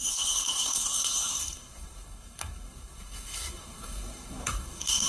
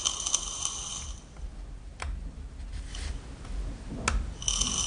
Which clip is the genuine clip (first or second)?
second